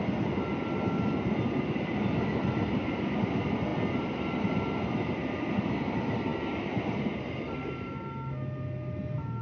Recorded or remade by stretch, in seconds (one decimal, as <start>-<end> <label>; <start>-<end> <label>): 0.0-9.4 recorded